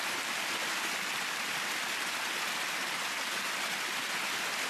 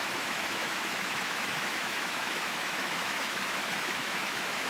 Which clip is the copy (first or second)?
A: second